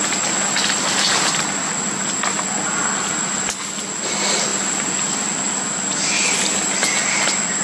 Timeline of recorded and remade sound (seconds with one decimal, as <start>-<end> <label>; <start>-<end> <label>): 0.0-7.6 recorded